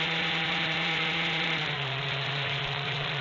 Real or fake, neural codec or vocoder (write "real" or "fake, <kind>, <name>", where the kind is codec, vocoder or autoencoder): fake, vocoder, Vocos